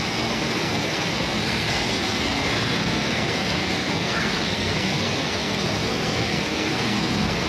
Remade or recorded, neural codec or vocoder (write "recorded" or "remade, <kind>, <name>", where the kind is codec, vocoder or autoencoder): remade, codec, SNAC